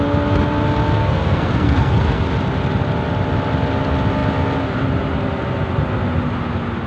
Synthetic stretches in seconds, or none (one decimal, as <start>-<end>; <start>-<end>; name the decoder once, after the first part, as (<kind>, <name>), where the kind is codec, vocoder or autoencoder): 1.0-2.2 (codec, SNAC)